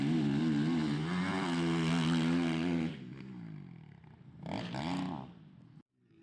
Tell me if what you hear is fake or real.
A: real